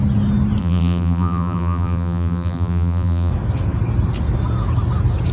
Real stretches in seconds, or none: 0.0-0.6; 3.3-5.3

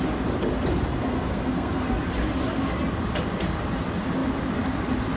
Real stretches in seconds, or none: 0.0-1.0; 1.9-5.2

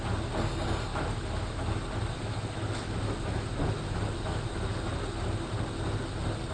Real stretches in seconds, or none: 0.0-0.9; 4.8-6.5